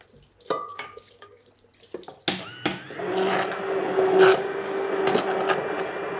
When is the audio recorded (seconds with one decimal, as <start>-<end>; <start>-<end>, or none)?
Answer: 0.0-0.7; 1.5-4.3; 4.9-6.2